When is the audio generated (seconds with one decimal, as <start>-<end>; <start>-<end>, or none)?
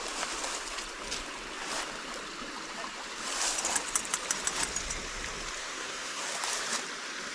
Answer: 5.6-6.2